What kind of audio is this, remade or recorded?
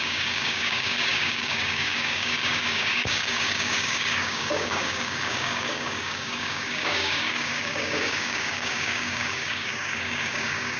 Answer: remade